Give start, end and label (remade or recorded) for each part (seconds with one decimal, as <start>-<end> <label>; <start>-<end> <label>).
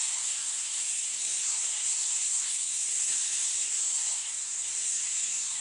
0.0-5.6 remade